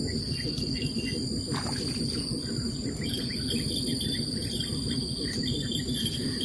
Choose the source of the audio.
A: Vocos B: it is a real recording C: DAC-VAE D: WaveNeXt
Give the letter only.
B